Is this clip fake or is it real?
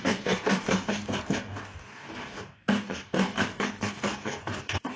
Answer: fake